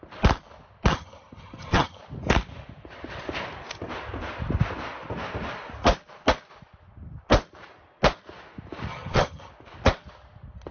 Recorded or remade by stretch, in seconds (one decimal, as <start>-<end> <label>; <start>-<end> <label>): 0.0-0.9 recorded; 0.9-2.0 remade; 2.0-8.9 recorded; 8.9-9.5 remade; 9.5-10.7 recorded